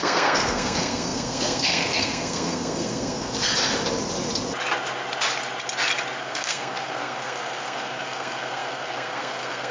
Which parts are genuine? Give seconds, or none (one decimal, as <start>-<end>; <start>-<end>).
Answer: 3.5-6.2